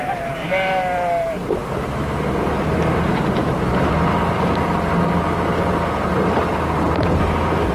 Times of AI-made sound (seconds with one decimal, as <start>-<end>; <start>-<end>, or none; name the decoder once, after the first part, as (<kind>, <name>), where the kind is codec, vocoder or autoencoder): 0.0-6.1 (vocoder, BigVGAN v2)